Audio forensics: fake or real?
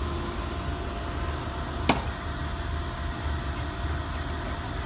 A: real